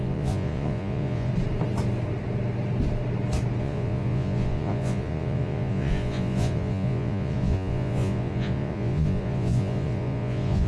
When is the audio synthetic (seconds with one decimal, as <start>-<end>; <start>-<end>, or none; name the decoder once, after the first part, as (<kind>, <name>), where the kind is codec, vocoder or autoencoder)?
0.0-1.3 (vocoder, Vocos); 3.6-10.7